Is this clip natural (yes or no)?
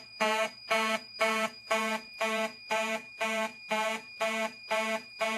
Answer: no